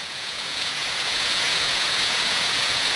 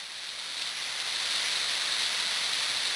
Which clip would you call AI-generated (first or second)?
first